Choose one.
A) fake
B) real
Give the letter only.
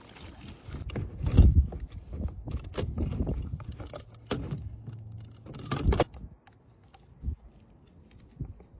B